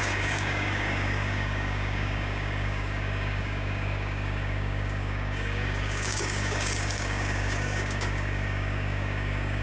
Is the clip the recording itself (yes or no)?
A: no